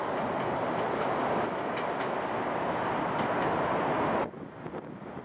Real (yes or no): yes